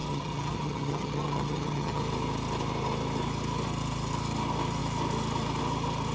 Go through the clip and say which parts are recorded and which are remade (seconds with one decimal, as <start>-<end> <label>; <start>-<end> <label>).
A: 0.0-2.0 remade; 2.0-6.1 recorded